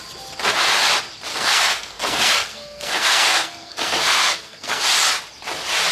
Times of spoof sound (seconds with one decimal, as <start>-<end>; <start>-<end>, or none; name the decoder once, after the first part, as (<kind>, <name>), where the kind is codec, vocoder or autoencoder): 1.3-4.8 (codec, SNAC)

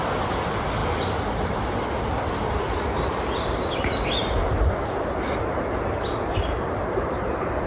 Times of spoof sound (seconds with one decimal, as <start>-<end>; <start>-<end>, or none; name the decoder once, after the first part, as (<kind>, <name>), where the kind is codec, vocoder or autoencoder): none

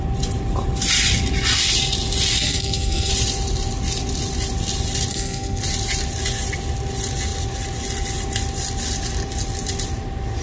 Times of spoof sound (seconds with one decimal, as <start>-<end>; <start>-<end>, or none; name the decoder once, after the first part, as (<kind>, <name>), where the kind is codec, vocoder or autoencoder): 2.4-3.1 (codec, SNAC); 5.1-5.6